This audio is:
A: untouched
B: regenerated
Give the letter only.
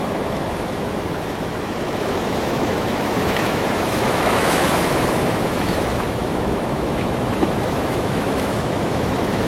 B